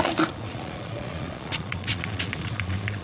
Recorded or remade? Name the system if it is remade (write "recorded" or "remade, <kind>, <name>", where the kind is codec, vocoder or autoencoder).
remade, vocoder, Vocos